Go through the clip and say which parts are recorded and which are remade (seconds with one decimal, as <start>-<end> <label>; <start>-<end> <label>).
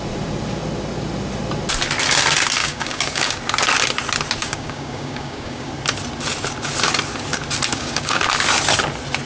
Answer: 0.0-2.6 recorded; 2.6-3.4 remade; 3.4-4.4 recorded; 4.4-5.7 remade; 5.7-7.7 recorded; 7.7-8.2 remade; 8.2-9.3 recorded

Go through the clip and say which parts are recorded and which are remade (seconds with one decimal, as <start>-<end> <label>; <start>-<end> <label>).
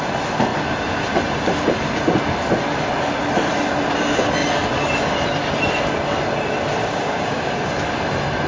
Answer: 0.0-6.8 recorded; 6.8-7.7 remade; 7.7-8.5 recorded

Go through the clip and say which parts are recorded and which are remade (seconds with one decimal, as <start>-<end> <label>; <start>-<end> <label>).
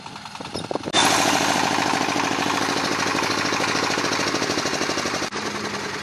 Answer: 0.0-3.1 recorded; 3.1-4.0 remade; 4.0-6.0 recorded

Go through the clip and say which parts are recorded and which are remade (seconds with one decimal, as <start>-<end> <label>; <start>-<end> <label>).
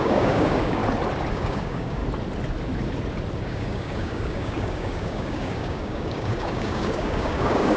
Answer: 0.0-0.8 remade; 0.8-1.3 recorded; 1.3-2.0 remade; 2.0-3.4 recorded; 3.4-7.8 remade